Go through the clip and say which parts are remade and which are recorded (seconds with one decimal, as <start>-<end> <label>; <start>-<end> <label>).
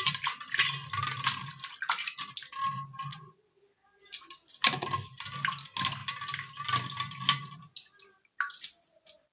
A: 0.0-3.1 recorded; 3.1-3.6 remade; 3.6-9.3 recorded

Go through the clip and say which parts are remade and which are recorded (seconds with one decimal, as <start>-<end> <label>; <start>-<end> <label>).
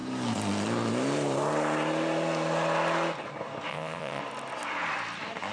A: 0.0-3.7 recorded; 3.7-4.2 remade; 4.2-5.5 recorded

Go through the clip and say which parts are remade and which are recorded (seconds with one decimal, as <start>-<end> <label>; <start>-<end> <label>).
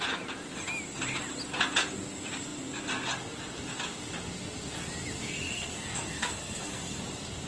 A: 0.0-5.2 recorded; 5.2-7.0 remade; 7.0-7.5 recorded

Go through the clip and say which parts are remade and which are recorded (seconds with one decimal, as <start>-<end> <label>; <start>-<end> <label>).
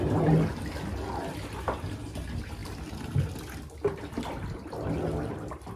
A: 0.0-5.8 recorded